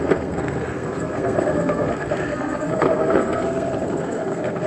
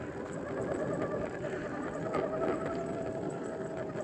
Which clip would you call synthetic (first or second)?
first